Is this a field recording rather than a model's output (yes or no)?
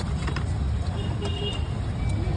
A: yes